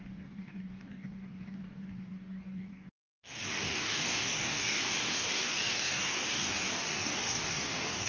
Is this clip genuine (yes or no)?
no